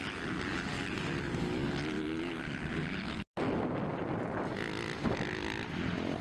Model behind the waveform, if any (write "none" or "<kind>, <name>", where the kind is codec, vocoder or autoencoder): none